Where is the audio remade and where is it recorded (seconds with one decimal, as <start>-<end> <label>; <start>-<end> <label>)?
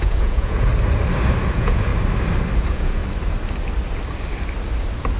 0.0-0.7 remade; 0.7-1.5 recorded; 1.5-1.9 remade; 1.9-2.6 recorded; 2.6-3.0 remade; 3.0-5.2 recorded